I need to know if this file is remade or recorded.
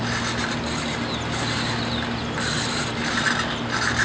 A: recorded